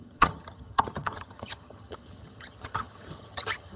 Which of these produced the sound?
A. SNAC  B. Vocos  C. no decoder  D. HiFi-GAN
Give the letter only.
D